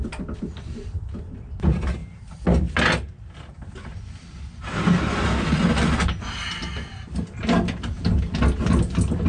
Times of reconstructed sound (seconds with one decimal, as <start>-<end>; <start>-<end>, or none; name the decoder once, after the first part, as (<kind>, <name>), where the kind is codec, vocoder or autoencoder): none